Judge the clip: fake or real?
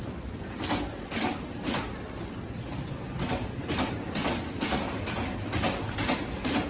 real